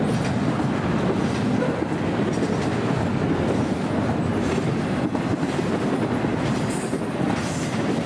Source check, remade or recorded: recorded